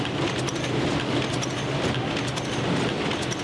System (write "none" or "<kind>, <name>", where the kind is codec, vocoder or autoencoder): none